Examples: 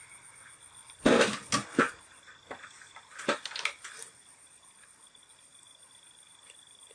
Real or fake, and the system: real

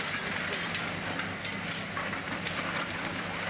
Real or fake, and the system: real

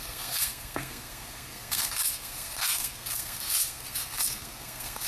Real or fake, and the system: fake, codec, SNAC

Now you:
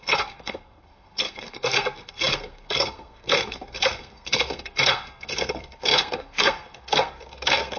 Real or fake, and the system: fake, codec, SNAC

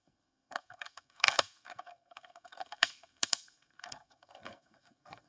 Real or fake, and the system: fake, codec, SNAC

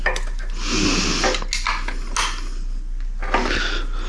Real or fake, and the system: real